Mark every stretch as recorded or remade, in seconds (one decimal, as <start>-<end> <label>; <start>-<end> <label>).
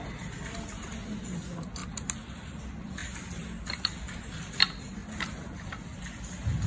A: 0.0-6.7 recorded